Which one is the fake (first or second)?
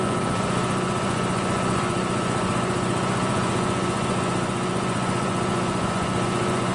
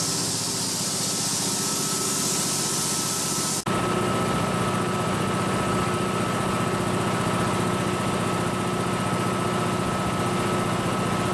first